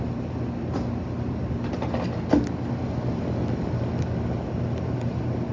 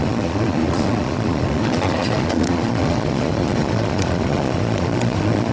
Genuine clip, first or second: first